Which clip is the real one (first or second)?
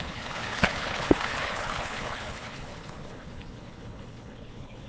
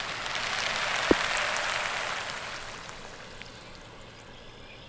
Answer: second